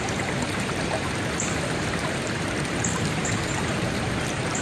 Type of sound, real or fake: fake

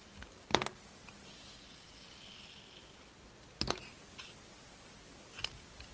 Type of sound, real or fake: real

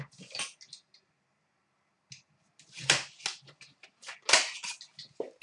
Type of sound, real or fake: real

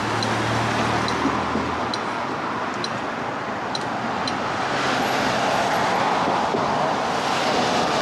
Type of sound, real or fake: real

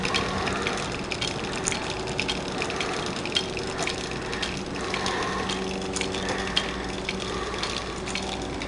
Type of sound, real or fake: real